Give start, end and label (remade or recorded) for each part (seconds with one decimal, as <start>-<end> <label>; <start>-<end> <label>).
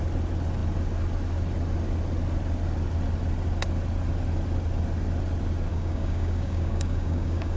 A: 0.0-5.7 recorded; 5.7-7.6 remade